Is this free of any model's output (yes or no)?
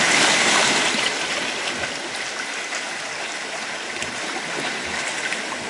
yes